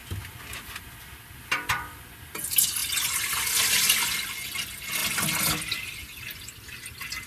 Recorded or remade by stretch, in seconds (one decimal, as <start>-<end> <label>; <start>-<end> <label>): 0.0-7.3 recorded